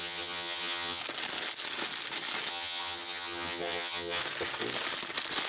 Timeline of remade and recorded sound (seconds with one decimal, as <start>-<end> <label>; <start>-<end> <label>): 0.0-1.0 remade; 1.0-2.5 recorded; 2.5-4.2 remade; 4.2-5.5 recorded